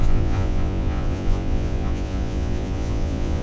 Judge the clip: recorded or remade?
remade